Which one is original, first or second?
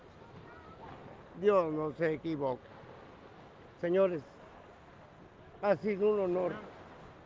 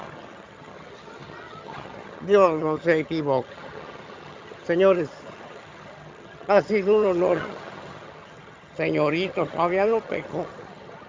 first